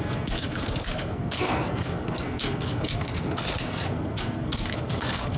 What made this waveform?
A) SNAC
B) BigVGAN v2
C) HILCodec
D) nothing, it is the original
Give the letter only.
A